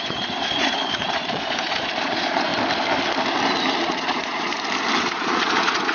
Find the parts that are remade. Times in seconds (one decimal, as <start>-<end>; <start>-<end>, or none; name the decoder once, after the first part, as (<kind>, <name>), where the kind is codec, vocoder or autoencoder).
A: 0.0-2.5 (vocoder, Vocos); 3.8-4.5; 5.0-5.9